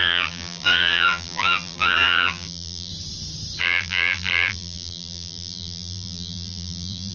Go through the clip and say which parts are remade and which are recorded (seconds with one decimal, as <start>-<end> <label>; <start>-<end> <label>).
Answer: 0.0-2.9 remade; 2.9-3.6 recorded; 3.6-7.1 remade